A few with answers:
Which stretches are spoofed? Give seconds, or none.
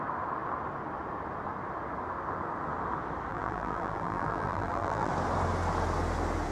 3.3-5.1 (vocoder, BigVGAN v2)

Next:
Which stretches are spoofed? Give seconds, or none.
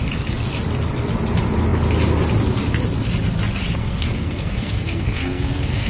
3.8-5.9 (codec, SNAC)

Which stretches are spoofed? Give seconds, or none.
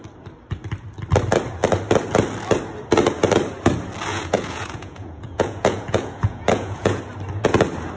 4.1-7.0 (vocoder, Vocos)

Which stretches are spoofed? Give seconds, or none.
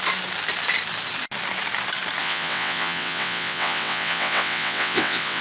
2.2-5.4 (vocoder, WaveNeXt)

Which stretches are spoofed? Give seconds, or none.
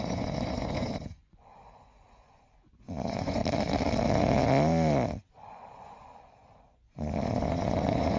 0.0-3.4 (vocoder, Vocos); 5.3-8.2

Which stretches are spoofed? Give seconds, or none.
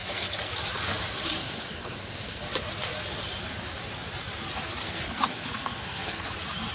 0.0-0.5 (codec, SNAC); 1.4-2.4; 4.8-6.2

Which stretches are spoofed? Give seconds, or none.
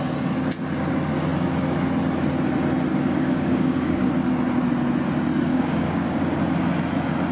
2.9-4.1 (codec, DAC); 5.5-6.2